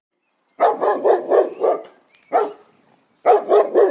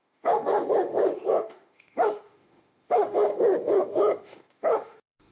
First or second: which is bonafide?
first